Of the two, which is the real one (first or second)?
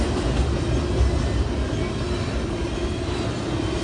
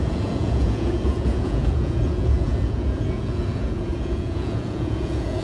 first